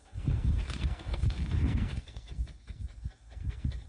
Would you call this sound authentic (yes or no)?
no